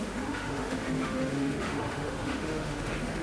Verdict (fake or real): fake